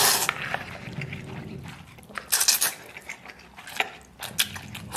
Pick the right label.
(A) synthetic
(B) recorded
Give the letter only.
B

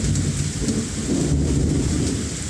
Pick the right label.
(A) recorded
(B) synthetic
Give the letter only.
A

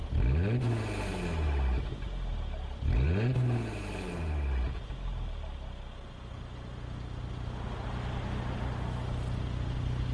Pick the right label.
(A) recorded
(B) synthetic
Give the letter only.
A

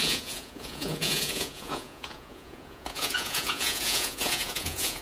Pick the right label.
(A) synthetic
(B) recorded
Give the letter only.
A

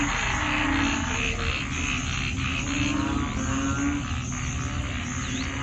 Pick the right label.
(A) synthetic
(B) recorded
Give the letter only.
B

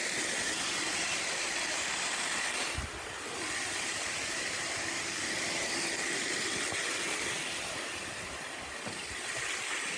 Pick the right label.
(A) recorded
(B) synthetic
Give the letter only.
A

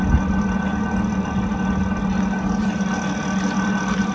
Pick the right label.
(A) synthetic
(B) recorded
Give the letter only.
B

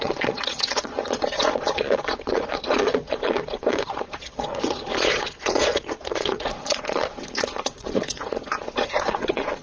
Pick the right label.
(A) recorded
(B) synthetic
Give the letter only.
B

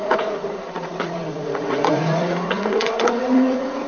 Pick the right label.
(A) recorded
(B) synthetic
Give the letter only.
B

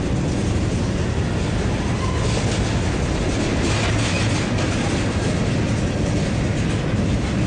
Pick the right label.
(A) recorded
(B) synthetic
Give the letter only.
A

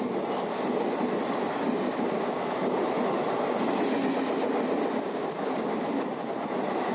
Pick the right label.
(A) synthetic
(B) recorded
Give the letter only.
B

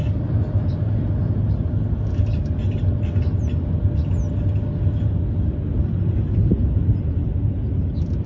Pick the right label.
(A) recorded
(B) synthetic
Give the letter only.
A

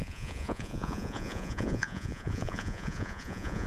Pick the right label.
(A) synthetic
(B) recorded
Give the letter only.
A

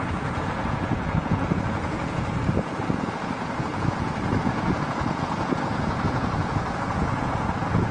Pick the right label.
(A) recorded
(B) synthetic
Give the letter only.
B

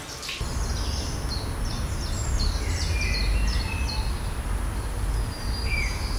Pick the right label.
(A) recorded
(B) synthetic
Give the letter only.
A